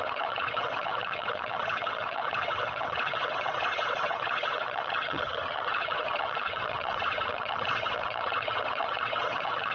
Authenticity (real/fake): fake